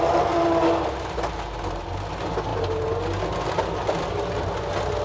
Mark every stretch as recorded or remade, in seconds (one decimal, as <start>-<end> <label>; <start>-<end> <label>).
0.0-5.0 recorded